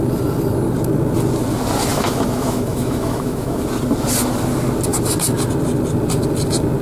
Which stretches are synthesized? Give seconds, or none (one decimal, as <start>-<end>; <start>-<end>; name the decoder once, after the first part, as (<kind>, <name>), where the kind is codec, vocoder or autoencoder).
1.9-3.6 (autoencoder, DAC-VAE)